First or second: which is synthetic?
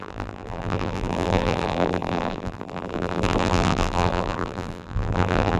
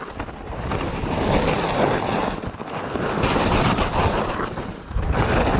first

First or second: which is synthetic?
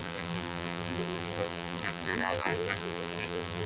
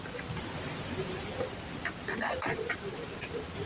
first